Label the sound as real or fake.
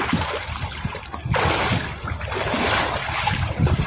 real